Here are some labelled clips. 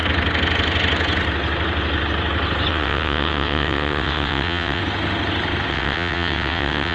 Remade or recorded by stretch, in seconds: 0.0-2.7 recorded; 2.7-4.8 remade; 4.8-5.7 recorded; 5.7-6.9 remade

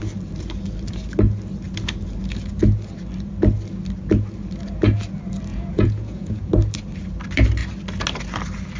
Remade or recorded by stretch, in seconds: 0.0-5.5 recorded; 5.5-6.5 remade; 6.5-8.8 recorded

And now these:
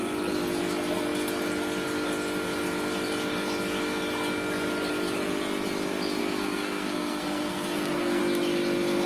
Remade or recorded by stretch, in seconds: 0.0-6.2 recorded; 6.2-8.2 remade; 8.2-9.1 recorded

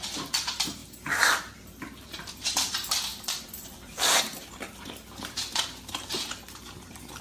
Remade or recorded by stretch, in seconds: 0.0-7.2 remade